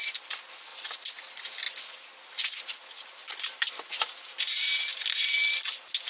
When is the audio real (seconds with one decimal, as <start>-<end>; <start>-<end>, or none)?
0.0-6.1